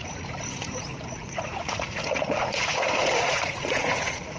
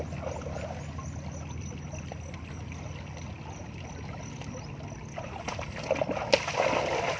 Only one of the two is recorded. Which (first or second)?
second